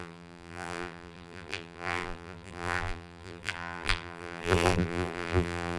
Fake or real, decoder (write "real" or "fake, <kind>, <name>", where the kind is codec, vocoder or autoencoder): fake, vocoder, BigVGAN v2